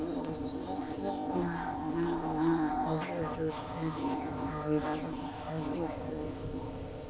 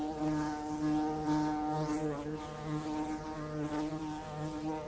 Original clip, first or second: second